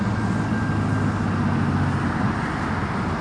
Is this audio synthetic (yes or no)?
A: no